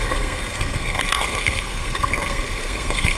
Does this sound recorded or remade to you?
remade